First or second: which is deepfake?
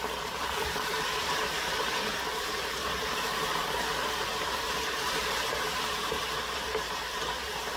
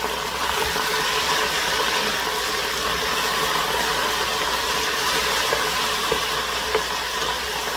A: first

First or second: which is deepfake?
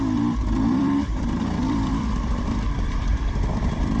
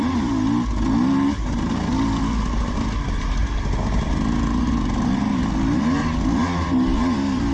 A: first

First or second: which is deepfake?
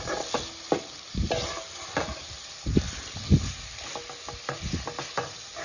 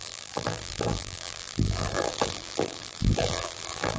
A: second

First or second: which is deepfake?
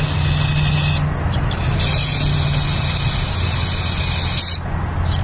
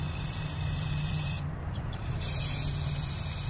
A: second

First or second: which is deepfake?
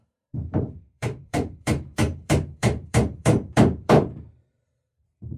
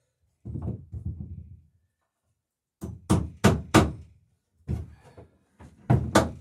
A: first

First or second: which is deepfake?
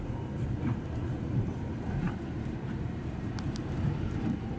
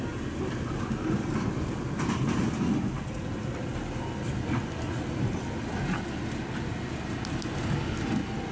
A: first